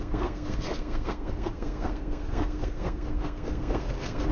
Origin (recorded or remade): remade